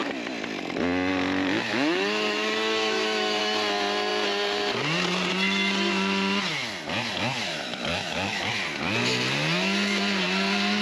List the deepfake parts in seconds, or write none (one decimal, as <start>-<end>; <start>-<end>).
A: 1.1-3.4; 7.5-8.5